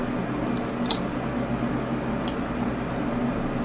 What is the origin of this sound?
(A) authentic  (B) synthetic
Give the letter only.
A